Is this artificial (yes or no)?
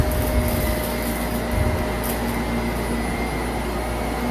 no